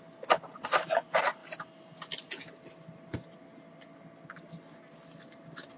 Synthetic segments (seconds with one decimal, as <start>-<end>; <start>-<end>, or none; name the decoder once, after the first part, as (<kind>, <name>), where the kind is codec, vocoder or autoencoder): none